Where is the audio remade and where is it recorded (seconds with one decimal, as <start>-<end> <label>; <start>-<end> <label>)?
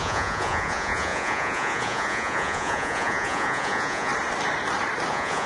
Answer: 0.0-4.1 remade; 4.1-5.1 recorded; 5.1-5.5 remade